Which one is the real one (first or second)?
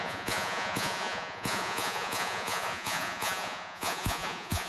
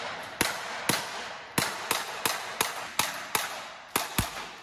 second